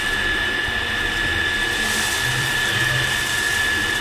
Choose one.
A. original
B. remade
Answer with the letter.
B